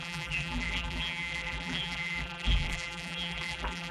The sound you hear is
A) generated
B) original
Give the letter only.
A